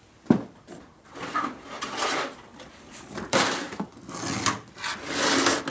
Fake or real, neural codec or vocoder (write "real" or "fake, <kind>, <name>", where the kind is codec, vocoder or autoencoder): real